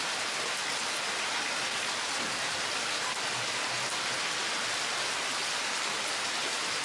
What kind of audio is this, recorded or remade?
recorded